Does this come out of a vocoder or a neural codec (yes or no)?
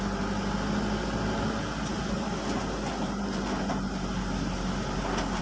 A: no